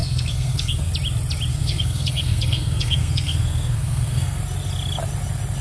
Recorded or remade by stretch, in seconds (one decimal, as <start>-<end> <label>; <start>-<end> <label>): 0.0-0.9 remade; 0.9-1.5 recorded; 1.5-4.4 remade; 4.4-5.6 recorded